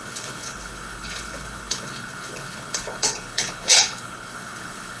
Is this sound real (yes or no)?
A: no